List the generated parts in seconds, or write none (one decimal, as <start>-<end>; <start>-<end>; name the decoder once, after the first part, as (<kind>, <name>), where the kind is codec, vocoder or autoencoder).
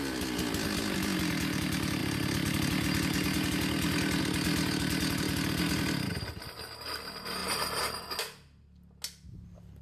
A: 7.4-7.9 (vocoder, BigVGAN v2)